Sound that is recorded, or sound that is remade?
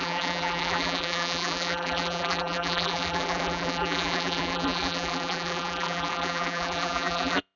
remade